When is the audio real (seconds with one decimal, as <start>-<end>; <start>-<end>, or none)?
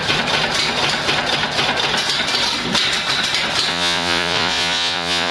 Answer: 0.0-3.7